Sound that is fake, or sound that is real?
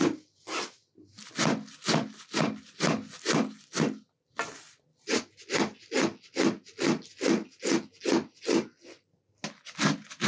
real